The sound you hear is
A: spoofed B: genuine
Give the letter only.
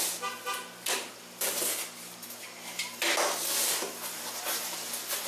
B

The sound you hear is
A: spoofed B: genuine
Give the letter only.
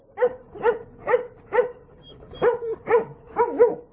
B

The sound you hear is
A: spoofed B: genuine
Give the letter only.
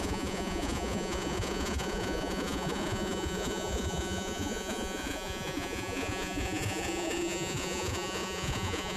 A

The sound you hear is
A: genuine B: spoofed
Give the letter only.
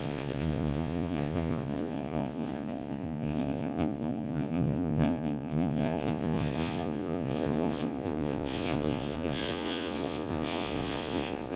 B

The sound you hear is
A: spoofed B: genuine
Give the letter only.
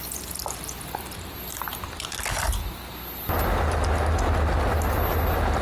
B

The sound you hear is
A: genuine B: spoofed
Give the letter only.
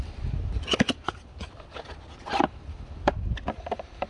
A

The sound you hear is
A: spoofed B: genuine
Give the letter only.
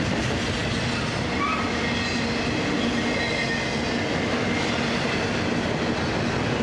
B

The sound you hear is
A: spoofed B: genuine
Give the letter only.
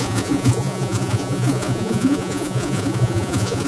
A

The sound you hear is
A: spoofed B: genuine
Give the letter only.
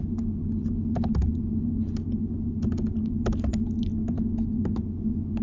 B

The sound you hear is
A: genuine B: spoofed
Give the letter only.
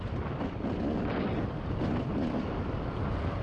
A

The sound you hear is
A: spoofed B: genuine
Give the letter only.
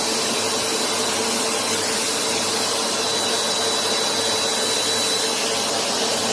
B